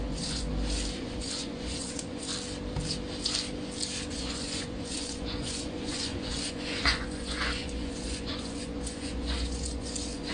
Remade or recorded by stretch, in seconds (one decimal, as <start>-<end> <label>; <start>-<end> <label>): 0.0-0.5 remade; 0.5-1.0 recorded; 1.0-2.3 remade; 2.3-4.1 recorded; 4.1-10.3 remade